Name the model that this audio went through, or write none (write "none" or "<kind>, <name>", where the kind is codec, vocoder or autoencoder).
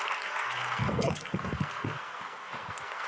codec, SNAC